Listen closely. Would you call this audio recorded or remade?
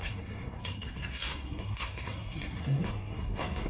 remade